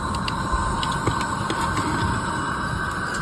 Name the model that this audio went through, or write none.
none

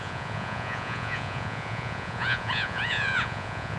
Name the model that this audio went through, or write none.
vocoder, Vocos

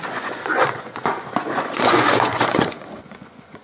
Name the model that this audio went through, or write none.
vocoder, Vocos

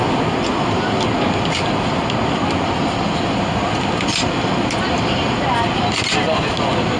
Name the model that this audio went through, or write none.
none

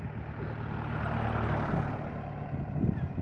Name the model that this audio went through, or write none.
none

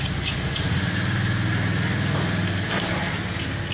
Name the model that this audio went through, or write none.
none